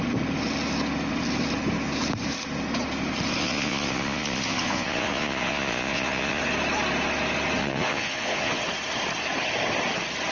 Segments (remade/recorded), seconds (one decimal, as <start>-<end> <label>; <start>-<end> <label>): 0.0-3.4 recorded; 3.4-6.4 remade; 6.4-7.6 recorded; 7.6-8.6 remade; 8.6-10.3 recorded